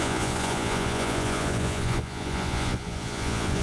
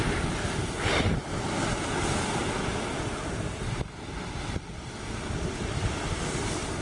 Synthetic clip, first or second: first